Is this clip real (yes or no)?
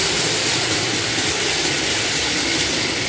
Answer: yes